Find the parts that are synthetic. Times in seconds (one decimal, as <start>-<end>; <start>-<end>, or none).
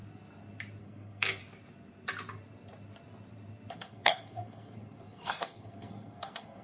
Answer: 0.8-1.4; 3.7-6.6